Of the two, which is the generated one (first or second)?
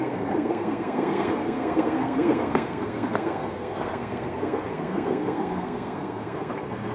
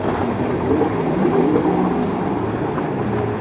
first